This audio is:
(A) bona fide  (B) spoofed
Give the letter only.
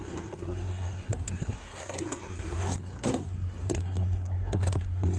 B